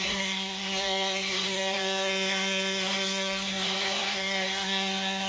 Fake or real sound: fake